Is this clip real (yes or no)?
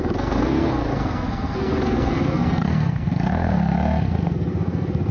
no